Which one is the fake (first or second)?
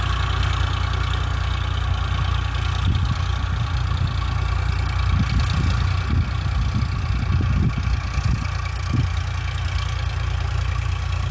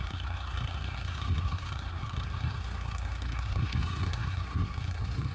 second